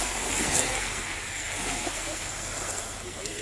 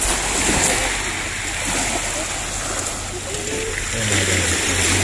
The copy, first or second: first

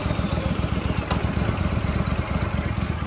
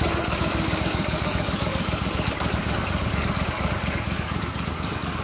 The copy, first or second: second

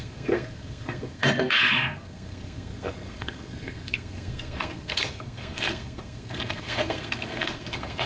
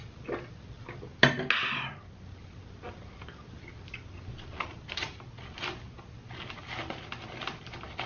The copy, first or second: first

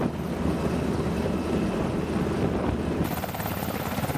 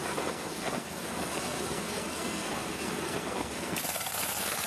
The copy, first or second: second